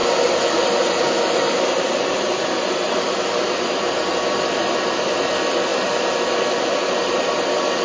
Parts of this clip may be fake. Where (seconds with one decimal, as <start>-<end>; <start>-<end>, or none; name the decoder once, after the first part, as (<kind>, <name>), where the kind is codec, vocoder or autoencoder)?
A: 0.8-7.8 (vocoder, BigVGAN v2)